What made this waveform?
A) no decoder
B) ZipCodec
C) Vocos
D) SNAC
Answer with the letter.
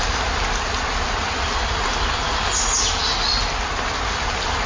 A